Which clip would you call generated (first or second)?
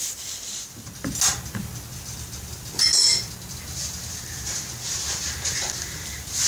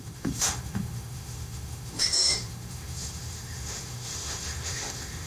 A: second